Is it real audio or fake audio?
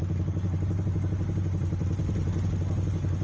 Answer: real